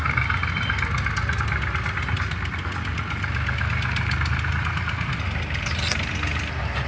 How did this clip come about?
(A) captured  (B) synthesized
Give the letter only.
A